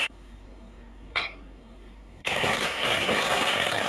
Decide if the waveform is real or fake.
fake